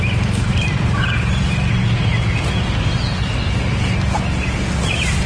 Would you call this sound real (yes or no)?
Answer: yes